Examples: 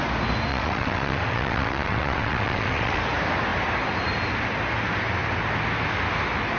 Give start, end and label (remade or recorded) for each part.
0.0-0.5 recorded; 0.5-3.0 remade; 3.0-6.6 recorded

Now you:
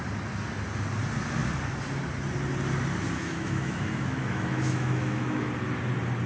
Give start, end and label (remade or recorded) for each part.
0.0-3.2 recorded; 3.2-5.5 remade; 5.5-6.3 recorded

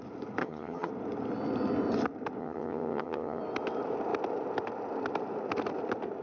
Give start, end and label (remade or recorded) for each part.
0.0-0.4 recorded; 0.4-0.9 remade; 0.9-2.4 recorded; 2.4-3.4 remade; 3.4-6.2 recorded

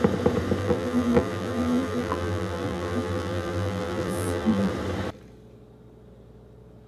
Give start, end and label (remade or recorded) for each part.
0.0-0.6 recorded; 0.6-4.7 remade; 4.7-6.9 recorded

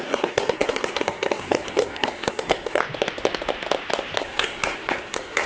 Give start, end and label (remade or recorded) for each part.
0.0-2.8 remade; 2.8-4.2 recorded; 4.2-5.5 remade